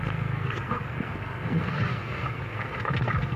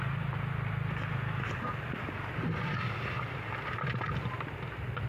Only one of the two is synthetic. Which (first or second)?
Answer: first